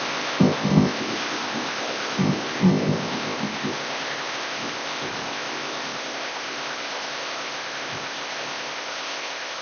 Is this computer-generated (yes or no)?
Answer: yes